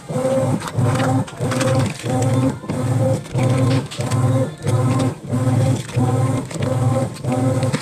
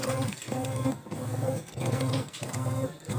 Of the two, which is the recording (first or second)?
first